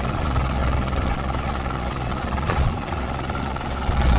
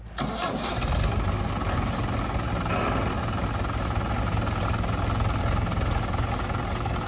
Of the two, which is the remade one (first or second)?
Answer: first